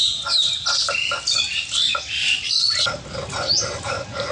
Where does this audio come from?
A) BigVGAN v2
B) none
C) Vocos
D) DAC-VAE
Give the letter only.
B